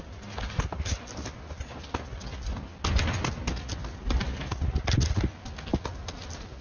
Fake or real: real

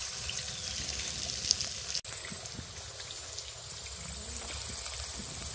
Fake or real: real